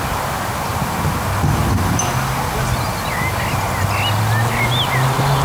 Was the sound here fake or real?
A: real